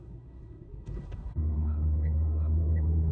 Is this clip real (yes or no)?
no